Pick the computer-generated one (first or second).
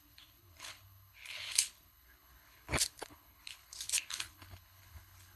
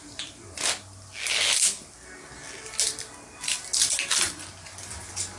first